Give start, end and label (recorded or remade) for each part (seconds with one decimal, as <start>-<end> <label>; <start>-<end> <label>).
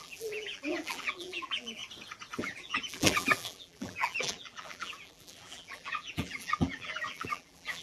0.0-1.8 remade; 1.8-2.4 recorded; 2.4-7.8 remade